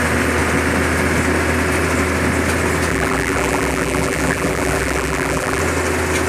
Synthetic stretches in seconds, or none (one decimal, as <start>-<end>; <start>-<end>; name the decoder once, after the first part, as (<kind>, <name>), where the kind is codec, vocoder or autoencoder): 2.9-5.6 (vocoder, BigVGAN v2)